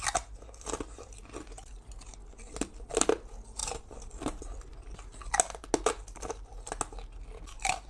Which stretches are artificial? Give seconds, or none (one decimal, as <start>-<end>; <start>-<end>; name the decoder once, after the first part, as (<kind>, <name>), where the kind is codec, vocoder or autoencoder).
3.6-4.4 (vocoder, BigVGAN v2)